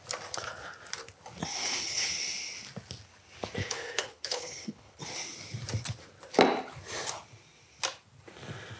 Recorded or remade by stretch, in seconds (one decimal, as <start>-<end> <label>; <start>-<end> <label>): 0.0-1.5 recorded; 1.5-2.1 remade; 2.1-3.6 recorded; 3.6-5.0 remade; 5.0-8.8 recorded